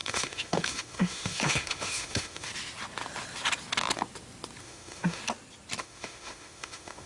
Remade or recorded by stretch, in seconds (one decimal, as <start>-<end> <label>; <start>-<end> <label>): 0.0-2.5 remade; 2.5-4.6 recorded; 4.6-5.2 remade; 5.2-5.8 recorded; 5.8-7.1 remade